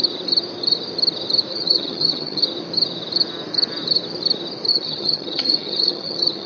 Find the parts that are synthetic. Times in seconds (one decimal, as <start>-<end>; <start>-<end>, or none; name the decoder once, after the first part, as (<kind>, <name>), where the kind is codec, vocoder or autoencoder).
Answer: 1.5-2.4 (vocoder, HiFi-GAN); 4.7-6.5